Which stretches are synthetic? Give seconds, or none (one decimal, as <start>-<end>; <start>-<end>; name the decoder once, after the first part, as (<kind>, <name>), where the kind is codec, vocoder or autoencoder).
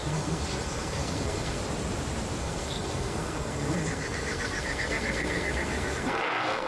0.0-1.6 (codec, SNAC); 2.4-6.7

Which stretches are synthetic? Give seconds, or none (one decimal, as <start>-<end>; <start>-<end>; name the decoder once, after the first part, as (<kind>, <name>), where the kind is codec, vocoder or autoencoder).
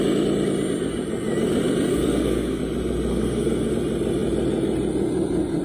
1.9-2.6 (codec, SNAC); 3.1-3.7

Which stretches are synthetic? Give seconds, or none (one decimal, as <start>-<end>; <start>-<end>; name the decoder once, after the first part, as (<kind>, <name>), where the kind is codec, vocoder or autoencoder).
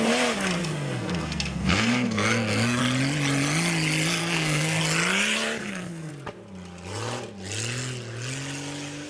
0.6-2.8 (codec, SNAC); 4.2-4.8; 5.6-6.1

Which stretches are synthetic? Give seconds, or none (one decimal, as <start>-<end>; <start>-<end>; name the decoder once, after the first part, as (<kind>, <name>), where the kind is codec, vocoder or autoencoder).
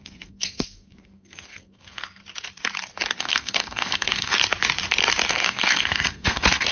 0.0-2.2 (codec, SNAC); 3.2-4.3; 5.3-6.7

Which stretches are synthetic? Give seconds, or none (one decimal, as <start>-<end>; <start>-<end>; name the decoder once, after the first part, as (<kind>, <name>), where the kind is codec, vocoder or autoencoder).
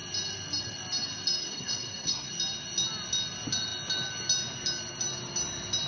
1.4-2.3 (codec, SNAC)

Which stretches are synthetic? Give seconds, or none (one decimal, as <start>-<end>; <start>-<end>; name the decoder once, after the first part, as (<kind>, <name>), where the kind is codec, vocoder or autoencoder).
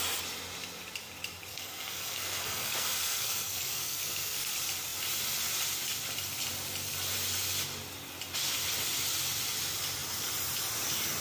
1.5-4.5 (codec, SNAC)